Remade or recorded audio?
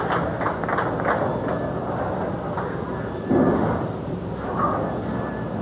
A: recorded